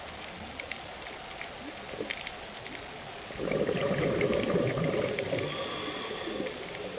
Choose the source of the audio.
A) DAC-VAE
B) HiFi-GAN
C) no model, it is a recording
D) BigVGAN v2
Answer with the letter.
C